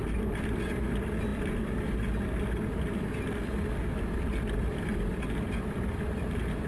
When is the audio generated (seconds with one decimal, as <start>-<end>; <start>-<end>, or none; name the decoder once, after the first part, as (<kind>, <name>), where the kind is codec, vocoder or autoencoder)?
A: none